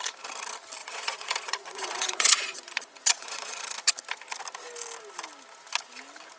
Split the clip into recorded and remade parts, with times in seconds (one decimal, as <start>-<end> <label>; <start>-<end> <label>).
0.0-0.8 recorded; 0.8-3.6 remade; 3.6-6.4 recorded